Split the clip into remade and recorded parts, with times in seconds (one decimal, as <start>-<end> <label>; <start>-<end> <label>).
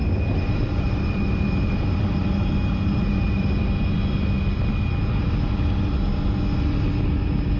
0.0-3.5 remade; 3.5-7.6 recorded